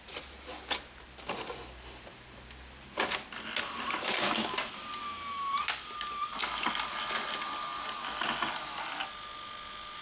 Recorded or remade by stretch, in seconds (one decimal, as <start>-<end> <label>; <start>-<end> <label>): 0.0-10.0 recorded